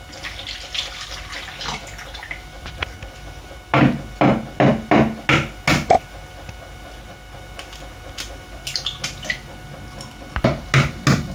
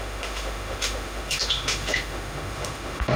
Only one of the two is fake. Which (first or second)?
second